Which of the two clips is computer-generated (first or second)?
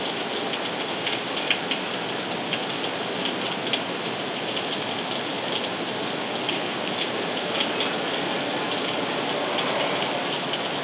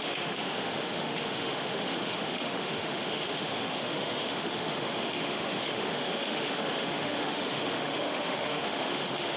second